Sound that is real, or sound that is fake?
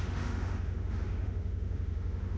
fake